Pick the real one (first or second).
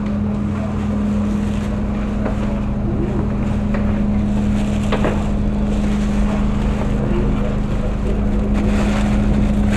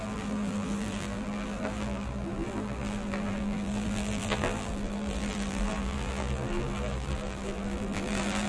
first